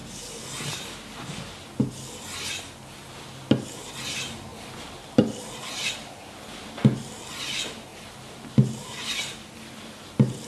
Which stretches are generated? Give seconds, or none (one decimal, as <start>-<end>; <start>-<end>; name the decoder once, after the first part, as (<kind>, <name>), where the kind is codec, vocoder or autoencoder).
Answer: none